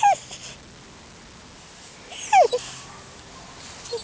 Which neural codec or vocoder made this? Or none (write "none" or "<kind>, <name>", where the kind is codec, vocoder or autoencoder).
none